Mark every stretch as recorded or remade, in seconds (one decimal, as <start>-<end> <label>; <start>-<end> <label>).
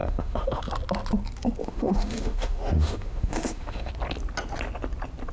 0.0-0.6 remade; 0.6-1.6 recorded; 1.6-3.9 remade; 3.9-5.3 recorded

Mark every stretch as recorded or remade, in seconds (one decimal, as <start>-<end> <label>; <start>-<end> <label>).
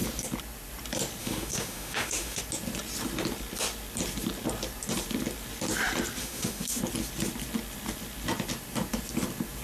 0.0-1.2 recorded; 1.2-2.4 remade; 2.4-6.2 recorded; 6.2-6.8 remade; 6.8-9.6 recorded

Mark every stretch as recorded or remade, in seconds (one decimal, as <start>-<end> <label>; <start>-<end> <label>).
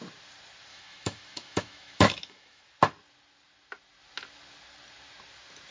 0.0-0.7 recorded; 0.7-2.6 remade; 2.6-5.7 recorded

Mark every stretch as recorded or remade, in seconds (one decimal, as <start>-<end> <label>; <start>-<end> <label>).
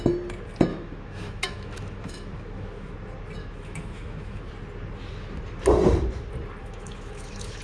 0.0-0.7 recorded; 0.7-2.9 remade; 2.9-3.4 recorded; 3.4-4.5 remade; 4.5-6.6 recorded; 6.6-7.6 remade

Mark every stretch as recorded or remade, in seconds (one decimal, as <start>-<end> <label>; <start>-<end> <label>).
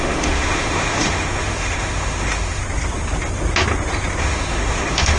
0.0-2.6 remade; 2.6-4.2 recorded; 4.2-5.2 remade